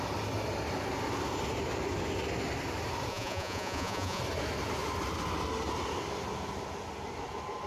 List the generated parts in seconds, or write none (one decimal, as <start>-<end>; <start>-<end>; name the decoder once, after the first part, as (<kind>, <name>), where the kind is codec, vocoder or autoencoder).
3.1-4.2 (vocoder, Vocos)